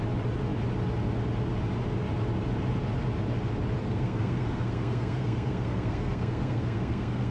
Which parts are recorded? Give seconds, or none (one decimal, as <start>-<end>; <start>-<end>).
0.0-3.8

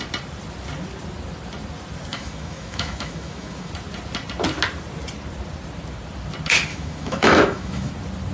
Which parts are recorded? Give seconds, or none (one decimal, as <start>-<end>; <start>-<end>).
0.0-2.1; 3.7-6.7; 7.9-8.3

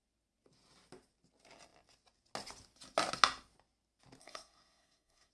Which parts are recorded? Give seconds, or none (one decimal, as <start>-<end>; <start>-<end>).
0.0-4.2

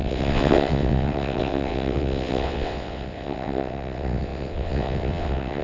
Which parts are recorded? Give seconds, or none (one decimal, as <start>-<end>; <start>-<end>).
none

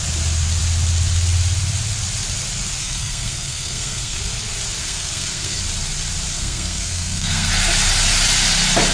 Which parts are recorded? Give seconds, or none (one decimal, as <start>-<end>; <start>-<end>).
0.0-2.8; 4.2-4.8; 5.6-6.3; 7.5-8.9

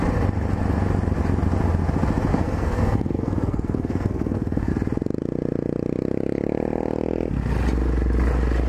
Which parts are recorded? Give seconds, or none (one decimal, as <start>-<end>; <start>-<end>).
0.0-2.3; 4.7-8.7